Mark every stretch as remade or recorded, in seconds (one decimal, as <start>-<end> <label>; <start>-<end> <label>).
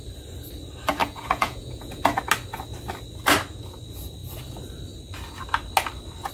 0.0-1.0 recorded; 1.0-2.2 remade; 2.2-6.3 recorded